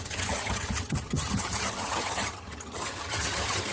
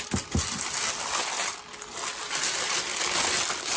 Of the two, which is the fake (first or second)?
first